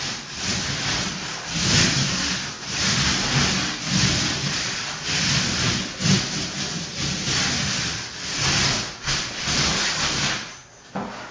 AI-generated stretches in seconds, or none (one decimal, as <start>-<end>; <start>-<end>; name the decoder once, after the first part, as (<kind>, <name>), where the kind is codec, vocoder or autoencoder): none